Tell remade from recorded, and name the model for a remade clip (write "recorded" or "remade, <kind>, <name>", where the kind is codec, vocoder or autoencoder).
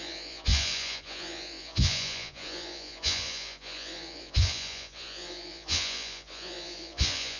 remade, vocoder, Vocos